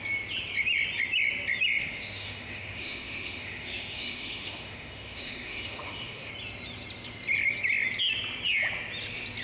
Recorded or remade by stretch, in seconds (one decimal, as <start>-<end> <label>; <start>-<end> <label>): 0.0-1.8 recorded; 1.8-6.3 remade; 6.3-9.4 recorded